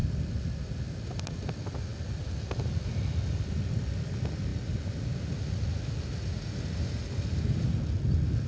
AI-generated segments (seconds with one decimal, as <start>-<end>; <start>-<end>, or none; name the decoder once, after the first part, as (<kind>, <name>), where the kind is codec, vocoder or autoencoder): none